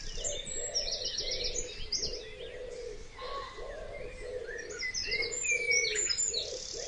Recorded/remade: recorded